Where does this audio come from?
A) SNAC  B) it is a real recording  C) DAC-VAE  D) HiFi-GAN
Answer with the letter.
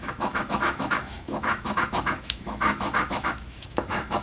C